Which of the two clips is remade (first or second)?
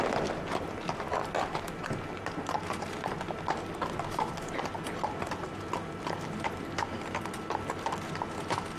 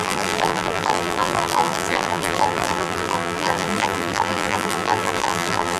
second